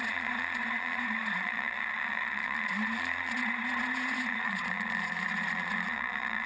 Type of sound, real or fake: fake